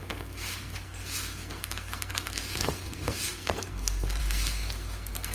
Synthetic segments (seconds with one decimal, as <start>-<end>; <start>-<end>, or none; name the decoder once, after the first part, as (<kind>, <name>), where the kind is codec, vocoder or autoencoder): 0.0-5.3 (codec, SNAC)